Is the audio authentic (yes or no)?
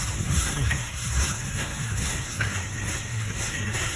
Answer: no